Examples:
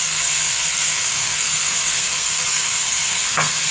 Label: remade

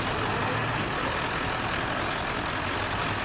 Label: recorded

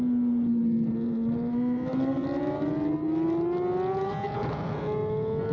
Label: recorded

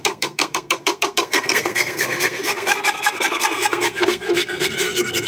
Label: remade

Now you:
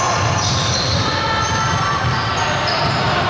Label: recorded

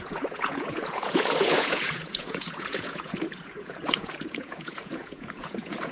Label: remade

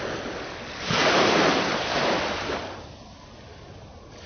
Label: recorded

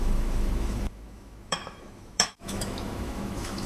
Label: remade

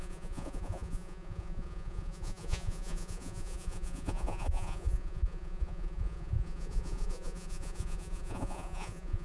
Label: remade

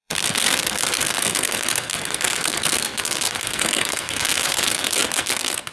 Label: remade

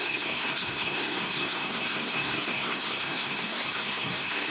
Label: remade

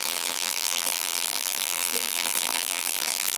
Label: remade